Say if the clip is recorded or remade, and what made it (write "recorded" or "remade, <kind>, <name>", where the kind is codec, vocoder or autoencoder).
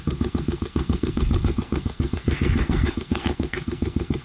remade, codec, SNAC